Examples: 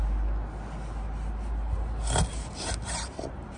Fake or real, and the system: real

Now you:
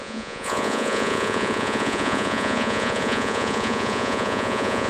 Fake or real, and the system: fake, vocoder, Vocos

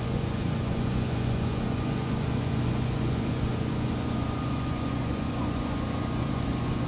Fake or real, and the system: fake, vocoder, Vocos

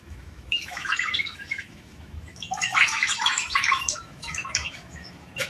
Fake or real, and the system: fake, autoencoder, DAC-VAE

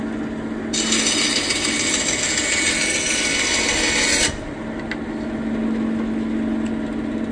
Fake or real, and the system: real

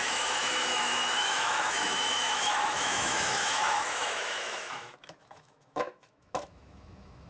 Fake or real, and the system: fake, autoencoder, DAC-VAE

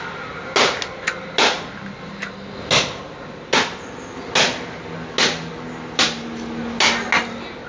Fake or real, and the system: real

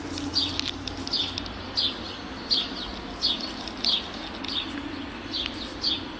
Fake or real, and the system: real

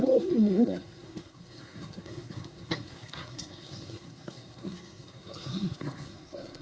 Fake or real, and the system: fake, codec, SNAC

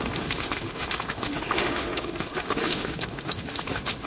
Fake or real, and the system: fake, autoencoder, DAC-VAE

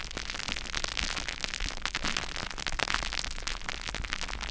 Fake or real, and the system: real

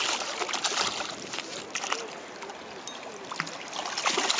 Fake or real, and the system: real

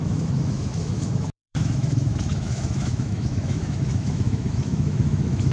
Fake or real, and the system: fake, autoencoder, DAC-VAE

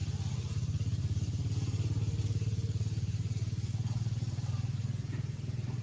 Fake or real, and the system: real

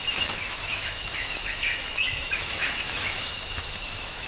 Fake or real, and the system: fake, autoencoder, DAC-VAE